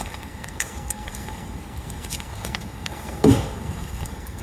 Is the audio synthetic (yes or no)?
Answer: yes